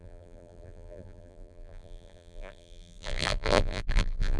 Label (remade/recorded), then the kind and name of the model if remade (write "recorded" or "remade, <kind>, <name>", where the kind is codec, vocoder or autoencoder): remade, vocoder, BigVGAN v2